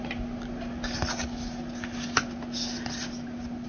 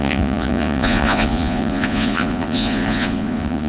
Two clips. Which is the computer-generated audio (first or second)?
second